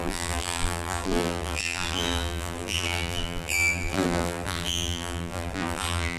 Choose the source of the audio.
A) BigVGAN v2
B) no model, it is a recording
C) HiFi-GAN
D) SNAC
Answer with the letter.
A